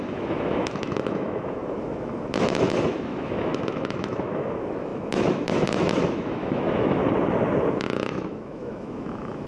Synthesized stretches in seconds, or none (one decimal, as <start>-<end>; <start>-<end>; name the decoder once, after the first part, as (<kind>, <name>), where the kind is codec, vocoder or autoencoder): 0.0-7.0 (autoencoder, DAC-VAE); 7.7-9.5